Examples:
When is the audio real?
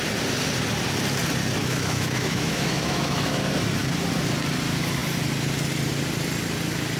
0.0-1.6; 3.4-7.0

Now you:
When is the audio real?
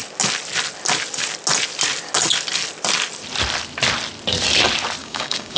0.0-5.0